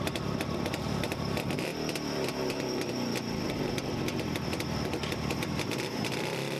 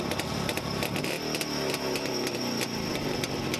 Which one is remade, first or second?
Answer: first